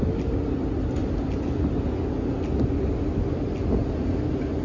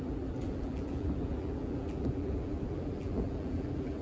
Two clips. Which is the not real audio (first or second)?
second